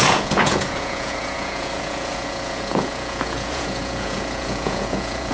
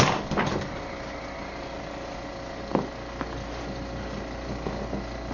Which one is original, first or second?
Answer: second